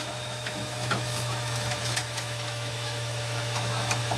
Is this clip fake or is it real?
fake